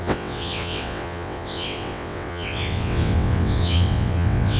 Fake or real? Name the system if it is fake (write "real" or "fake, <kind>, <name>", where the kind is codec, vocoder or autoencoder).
fake, vocoder, WaveNeXt